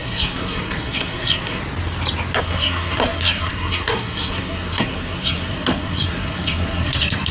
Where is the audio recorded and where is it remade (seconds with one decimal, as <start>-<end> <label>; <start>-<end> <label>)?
0.0-1.6 remade; 1.6-2.4 recorded; 2.4-7.3 remade